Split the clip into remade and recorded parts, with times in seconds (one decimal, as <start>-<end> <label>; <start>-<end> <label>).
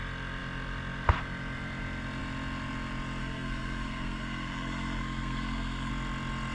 0.0-3.2 recorded; 3.2-5.9 remade; 5.9-6.5 recorded